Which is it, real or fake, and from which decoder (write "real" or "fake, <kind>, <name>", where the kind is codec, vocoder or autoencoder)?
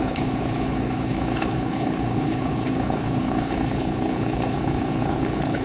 fake, codec, HILCodec